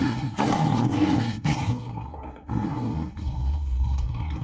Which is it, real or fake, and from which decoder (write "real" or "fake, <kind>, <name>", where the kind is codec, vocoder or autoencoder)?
fake, codec, SNAC